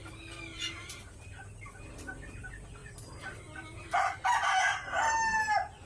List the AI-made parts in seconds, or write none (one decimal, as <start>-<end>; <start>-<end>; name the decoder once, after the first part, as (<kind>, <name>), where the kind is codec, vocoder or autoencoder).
2.8-3.4 (vocoder, BigVGAN v2)